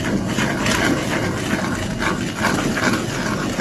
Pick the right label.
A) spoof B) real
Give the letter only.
B